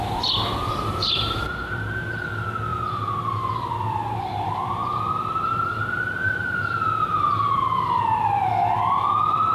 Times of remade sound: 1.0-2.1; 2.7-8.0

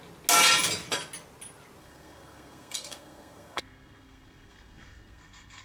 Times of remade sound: 1.8-5.6

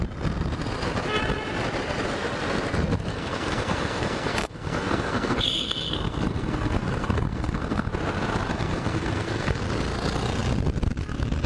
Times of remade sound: 3.1-7.9; 8.5-9.6

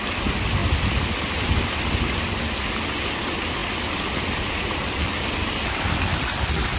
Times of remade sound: none

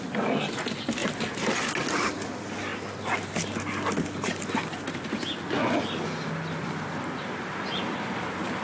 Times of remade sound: 1.0-1.5

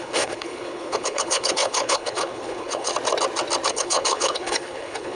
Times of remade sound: 0.0-2.9; 3.7-5.2

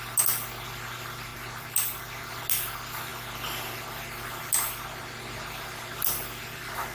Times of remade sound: 1.3-2.3